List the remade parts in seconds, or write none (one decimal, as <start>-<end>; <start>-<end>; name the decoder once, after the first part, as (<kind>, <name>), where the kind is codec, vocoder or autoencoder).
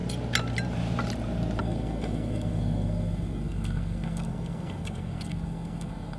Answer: 1.6-6.2 (codec, SNAC)